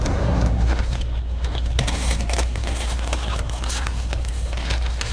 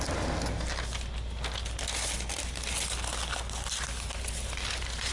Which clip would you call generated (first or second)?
first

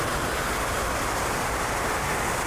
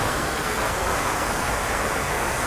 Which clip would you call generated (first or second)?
second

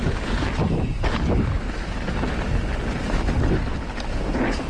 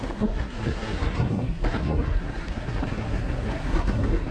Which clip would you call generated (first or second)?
second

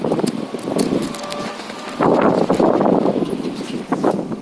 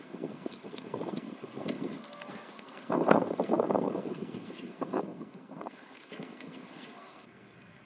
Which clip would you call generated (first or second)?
second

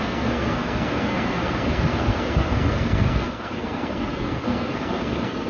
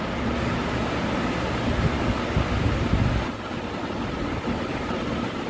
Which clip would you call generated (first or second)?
first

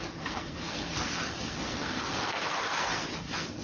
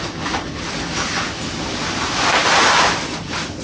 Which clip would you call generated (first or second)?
first